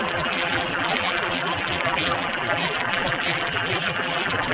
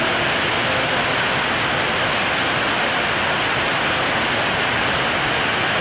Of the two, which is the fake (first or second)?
first